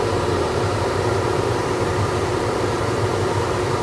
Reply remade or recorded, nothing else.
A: remade